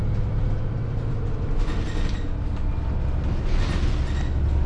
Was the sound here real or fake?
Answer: real